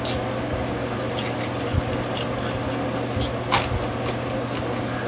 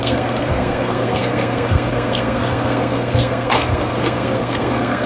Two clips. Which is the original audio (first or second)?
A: first